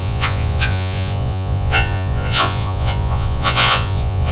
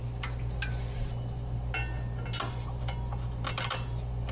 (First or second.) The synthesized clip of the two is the first